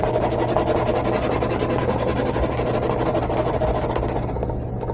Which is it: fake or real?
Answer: real